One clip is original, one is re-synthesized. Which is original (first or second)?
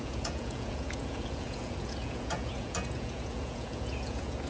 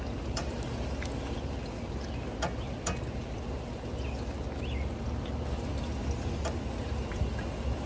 second